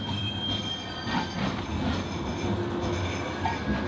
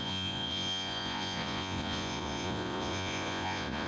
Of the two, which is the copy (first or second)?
second